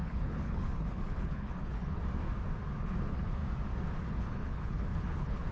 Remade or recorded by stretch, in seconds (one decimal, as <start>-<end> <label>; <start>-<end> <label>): 0.0-2.0 remade; 2.0-2.8 recorded; 2.8-3.4 remade; 3.4-4.0 recorded; 4.0-5.5 remade